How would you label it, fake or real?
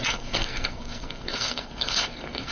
fake